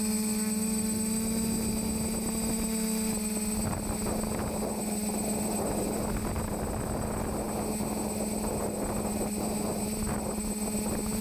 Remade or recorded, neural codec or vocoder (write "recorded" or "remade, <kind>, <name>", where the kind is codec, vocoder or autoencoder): recorded